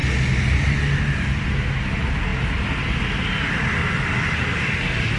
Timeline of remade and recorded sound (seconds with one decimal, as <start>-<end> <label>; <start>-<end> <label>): 0.0-5.2 recorded